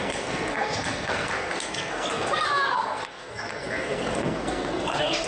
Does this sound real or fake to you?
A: fake